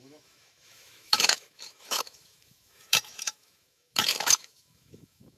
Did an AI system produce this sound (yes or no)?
yes